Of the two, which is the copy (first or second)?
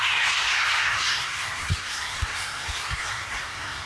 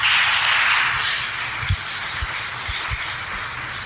first